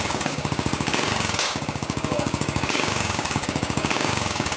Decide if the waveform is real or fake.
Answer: fake